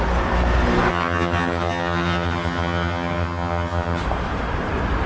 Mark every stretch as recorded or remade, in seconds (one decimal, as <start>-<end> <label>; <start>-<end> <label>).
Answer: 0.0-0.9 recorded; 0.9-4.0 remade; 4.0-5.1 recorded